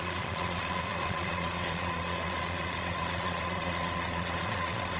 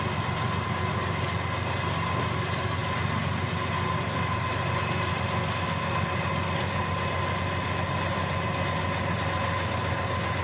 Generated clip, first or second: first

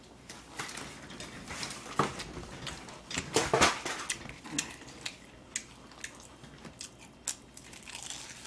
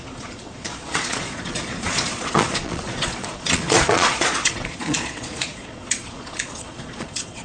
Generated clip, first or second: second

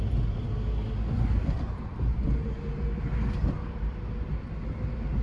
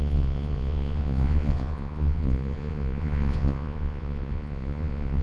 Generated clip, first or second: second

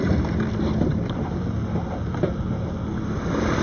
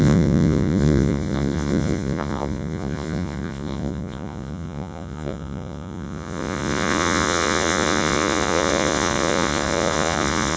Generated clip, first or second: second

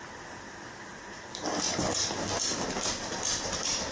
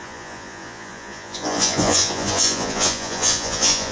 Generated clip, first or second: second